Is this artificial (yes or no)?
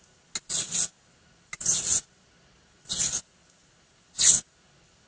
no